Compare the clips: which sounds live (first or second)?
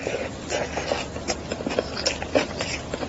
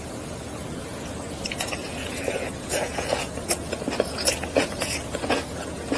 first